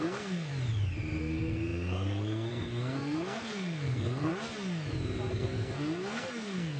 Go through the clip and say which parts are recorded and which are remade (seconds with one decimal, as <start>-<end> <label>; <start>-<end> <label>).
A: 0.0-0.5 remade; 0.5-1.2 recorded; 1.2-4.3 remade; 4.3-5.3 recorded; 5.3-6.8 remade